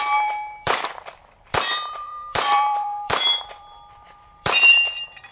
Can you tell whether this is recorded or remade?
remade